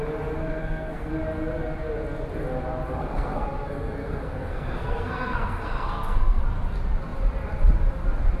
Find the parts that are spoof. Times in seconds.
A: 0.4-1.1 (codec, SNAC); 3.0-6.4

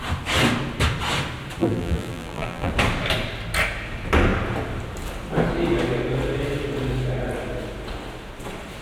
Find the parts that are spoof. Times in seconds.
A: 1.6-2.7 (vocoder, BigVGAN v2)

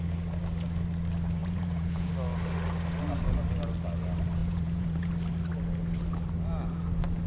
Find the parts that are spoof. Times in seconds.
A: 1.4-2.1 (vocoder, Vocos); 4.4-5.1

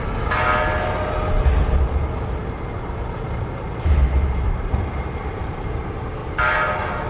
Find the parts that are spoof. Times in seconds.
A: 1.6-6.2 (vocoder, BigVGAN v2)

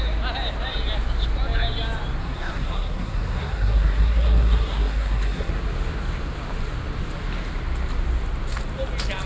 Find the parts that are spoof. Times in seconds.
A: 2.2-5.5 (codec, SNAC)